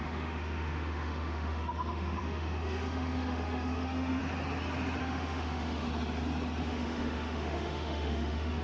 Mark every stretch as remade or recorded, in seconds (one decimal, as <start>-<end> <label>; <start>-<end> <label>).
0.0-4.2 remade; 4.2-5.0 recorded; 5.0-5.9 remade; 5.9-6.6 recorded; 6.6-8.6 remade